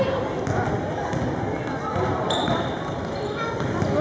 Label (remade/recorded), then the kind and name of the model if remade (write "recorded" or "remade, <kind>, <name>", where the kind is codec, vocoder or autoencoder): recorded